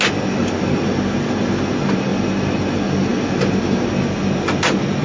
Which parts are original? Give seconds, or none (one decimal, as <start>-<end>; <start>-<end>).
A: 0.0-5.0